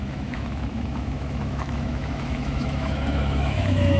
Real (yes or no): no